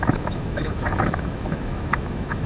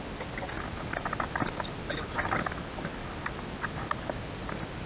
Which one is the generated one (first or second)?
first